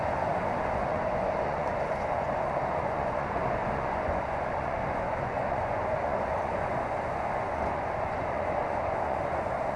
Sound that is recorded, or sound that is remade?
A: remade